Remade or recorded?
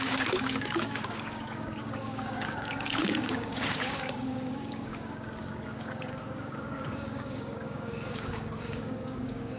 remade